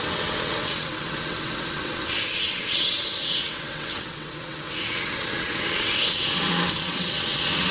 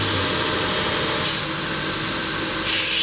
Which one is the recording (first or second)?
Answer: second